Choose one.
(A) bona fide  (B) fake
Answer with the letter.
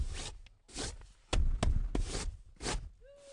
A